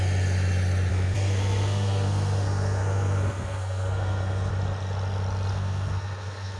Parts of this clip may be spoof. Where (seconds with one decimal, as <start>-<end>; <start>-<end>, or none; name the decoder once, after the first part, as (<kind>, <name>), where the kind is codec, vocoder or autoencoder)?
0.9-4.5 (codec, SNAC); 5.5-6.6